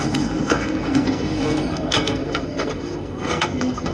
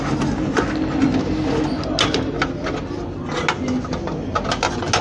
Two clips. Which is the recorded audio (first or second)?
second